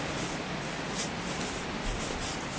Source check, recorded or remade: recorded